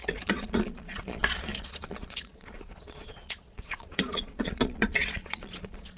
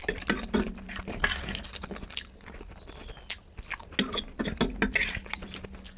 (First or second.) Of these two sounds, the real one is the second